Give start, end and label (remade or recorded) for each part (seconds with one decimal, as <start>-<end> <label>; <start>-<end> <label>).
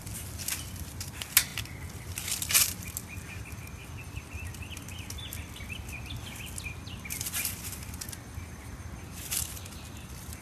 0.0-10.4 recorded